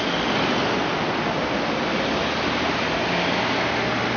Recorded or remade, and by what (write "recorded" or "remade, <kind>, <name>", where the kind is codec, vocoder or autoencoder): recorded